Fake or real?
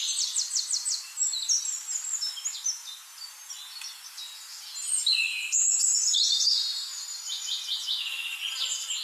real